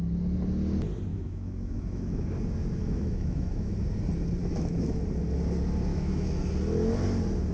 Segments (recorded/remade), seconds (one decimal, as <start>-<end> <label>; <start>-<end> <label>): 0.0-1.1 recorded; 1.1-2.3 remade; 2.3-2.8 recorded; 2.8-3.7 remade; 3.7-4.4 recorded; 4.4-5.0 remade; 5.0-5.9 recorded; 5.9-6.5 remade; 6.5-7.5 recorded